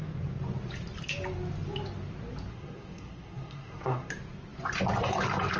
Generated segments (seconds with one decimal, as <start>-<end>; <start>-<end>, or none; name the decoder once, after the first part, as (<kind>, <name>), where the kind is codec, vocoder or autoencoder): 2.5-4.1 (codec, SNAC)